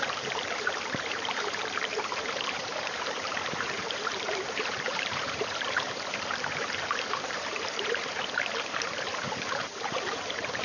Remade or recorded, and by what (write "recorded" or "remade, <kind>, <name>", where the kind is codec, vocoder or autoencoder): remade, vocoder, BigVGAN v2